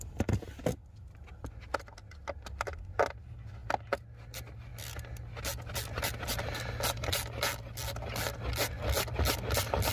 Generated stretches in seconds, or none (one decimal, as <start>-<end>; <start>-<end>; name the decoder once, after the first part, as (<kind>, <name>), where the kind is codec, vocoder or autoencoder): none